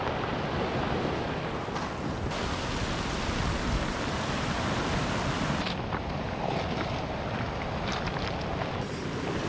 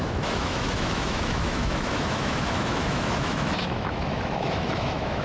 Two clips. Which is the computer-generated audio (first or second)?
second